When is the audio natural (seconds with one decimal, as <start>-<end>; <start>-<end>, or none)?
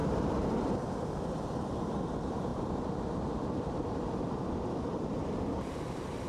1.6-2.5; 5.5-6.3